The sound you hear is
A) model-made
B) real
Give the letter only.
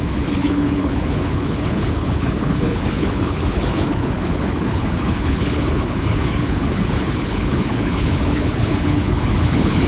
A